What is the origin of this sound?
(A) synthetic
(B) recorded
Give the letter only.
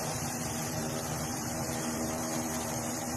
A